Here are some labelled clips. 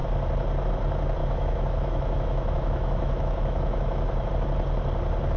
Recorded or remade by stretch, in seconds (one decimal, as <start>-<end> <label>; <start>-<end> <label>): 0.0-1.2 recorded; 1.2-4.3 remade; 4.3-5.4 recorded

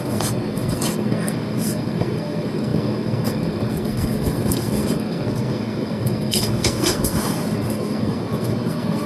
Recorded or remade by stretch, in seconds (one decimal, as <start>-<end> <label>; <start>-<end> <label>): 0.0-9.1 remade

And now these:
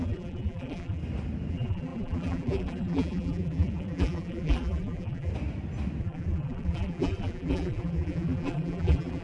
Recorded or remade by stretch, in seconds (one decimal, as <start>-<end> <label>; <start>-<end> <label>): 0.0-1.0 remade; 1.0-1.5 recorded; 1.5-5.3 remade; 5.3-6.0 recorded; 6.0-9.2 remade